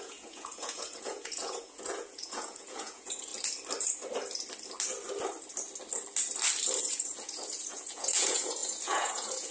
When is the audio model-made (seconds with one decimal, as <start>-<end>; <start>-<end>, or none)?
0.0-3.3; 6.8-9.5